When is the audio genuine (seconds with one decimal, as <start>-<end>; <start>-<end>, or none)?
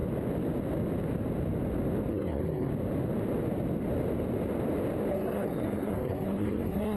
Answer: 0.0-2.1; 2.7-5.1